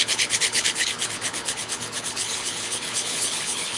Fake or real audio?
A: fake